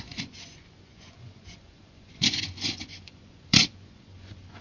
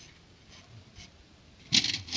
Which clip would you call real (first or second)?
second